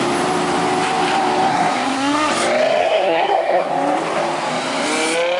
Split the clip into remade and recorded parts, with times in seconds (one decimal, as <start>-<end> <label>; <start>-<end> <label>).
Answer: 0.0-1.5 recorded; 1.5-2.3 remade; 2.3-2.8 recorded; 2.8-3.7 remade; 3.7-5.4 recorded

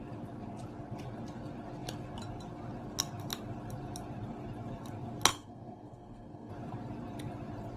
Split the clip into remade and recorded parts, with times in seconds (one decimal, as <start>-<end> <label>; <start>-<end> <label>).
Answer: 0.0-5.3 recorded; 5.3-6.5 remade; 6.5-7.8 recorded

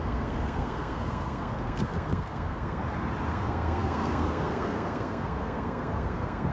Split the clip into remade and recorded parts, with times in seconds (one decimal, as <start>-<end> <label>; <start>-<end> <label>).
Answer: 0.0-2.8 remade; 2.8-3.3 recorded; 3.3-6.5 remade

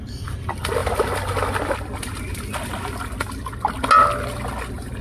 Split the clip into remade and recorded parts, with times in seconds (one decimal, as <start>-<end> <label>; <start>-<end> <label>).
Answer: 0.0-5.0 recorded